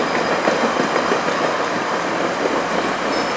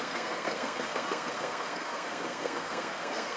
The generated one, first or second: second